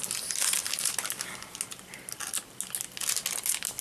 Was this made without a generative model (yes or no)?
yes